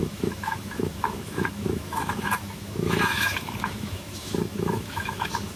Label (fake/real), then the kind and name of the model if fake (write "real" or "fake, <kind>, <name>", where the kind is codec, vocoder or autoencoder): fake, autoencoder, DAC-VAE